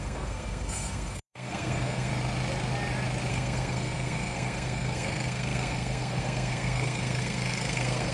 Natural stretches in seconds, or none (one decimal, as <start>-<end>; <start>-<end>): 2.1-3.3